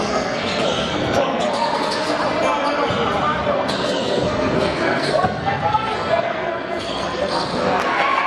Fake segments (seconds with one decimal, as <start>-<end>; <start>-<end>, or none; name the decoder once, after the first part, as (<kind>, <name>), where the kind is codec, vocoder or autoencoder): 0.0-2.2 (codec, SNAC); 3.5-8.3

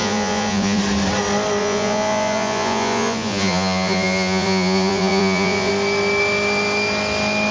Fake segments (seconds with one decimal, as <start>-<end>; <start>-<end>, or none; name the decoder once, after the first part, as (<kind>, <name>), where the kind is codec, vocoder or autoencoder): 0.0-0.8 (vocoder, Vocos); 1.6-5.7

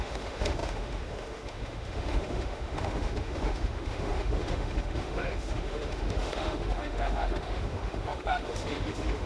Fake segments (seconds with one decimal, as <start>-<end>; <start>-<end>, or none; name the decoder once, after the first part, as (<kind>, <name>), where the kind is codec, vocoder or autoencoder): 0.0-9.3 (autoencoder, DAC-VAE)

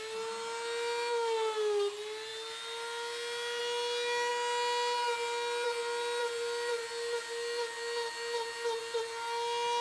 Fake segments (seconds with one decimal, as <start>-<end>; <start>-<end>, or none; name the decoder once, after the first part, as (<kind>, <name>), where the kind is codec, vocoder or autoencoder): none